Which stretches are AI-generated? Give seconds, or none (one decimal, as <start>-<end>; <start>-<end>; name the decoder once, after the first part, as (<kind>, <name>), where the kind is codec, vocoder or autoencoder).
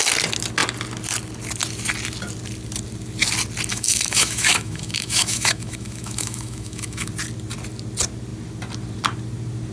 3.7-7.1 (autoencoder, DAC-VAE)